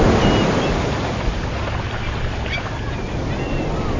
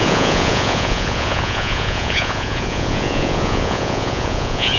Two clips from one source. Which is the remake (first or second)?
second